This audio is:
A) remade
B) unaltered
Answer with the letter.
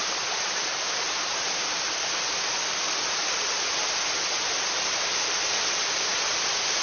B